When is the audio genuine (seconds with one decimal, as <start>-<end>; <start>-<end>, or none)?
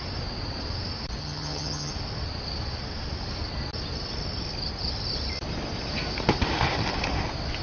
0.0-1.2; 1.9-7.6